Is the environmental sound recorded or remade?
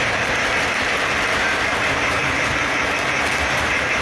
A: remade